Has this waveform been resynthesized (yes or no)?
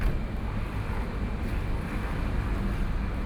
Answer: no